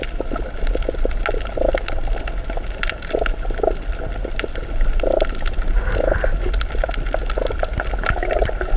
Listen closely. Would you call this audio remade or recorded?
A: recorded